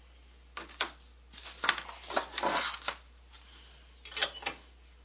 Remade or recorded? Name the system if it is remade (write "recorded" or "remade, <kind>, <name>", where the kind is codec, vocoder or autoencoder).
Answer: recorded